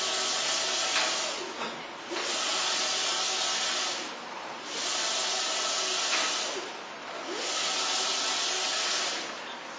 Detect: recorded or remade recorded